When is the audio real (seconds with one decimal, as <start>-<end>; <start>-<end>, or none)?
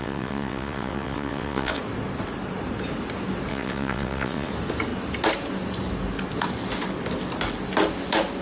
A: 1.8-3.5; 4.5-8.4